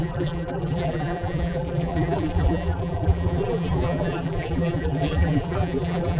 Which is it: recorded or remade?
remade